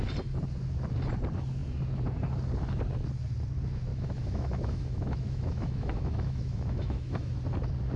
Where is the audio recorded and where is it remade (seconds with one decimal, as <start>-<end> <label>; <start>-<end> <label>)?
0.0-3.9 recorded; 3.9-7.3 remade; 7.3-8.0 recorded